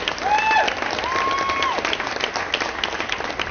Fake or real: real